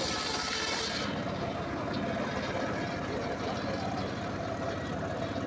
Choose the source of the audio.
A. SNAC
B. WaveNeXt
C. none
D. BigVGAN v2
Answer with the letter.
C